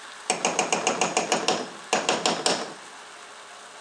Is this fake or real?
real